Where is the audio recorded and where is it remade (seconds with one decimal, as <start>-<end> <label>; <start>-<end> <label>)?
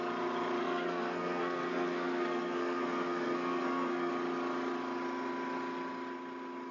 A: 0.0-0.6 recorded; 0.6-4.1 remade; 4.1-6.7 recorded